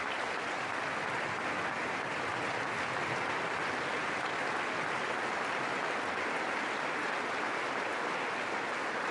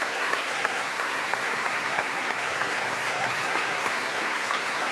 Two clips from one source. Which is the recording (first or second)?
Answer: first